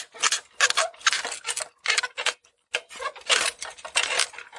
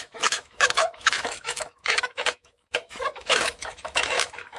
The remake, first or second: second